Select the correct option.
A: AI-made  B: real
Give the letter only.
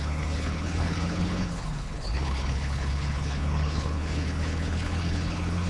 A